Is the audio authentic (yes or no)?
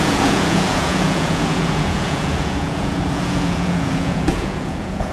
no